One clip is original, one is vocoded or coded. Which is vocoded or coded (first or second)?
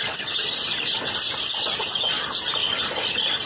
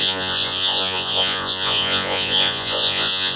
second